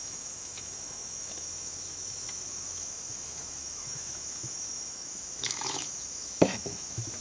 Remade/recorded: remade